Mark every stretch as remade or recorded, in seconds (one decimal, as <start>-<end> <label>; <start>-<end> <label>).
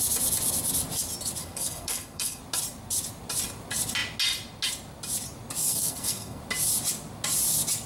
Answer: 0.0-1.4 recorded; 1.4-2.4 remade; 2.4-5.6 recorded; 5.6-6.4 remade; 6.4-7.9 recorded